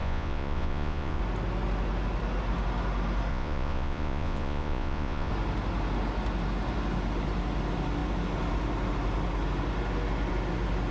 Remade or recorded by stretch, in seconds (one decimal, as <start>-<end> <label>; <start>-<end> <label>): 0.0-1.2 remade; 1.2-3.3 recorded; 3.3-5.3 remade; 5.3-10.9 recorded